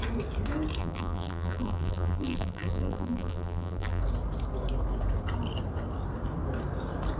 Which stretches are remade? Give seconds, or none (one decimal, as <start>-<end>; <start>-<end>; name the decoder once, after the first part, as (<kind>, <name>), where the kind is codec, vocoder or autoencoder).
0.8-4.0 (vocoder, BigVGAN v2)